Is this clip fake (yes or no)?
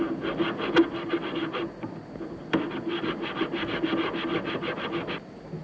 no